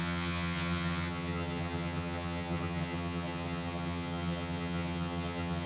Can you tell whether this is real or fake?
fake